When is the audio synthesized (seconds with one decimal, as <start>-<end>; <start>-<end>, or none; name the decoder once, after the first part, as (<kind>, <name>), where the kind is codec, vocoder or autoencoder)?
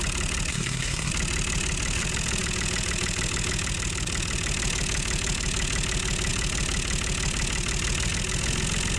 0.5-1.1 (codec, SNAC)